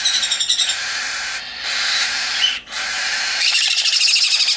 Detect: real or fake real